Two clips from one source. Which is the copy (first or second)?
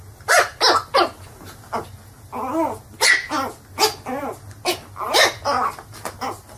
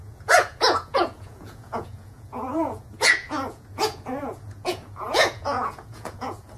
second